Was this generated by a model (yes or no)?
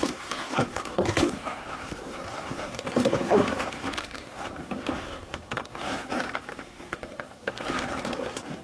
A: yes